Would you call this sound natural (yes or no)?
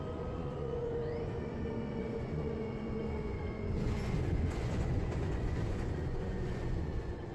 no